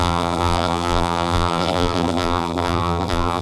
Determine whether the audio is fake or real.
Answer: fake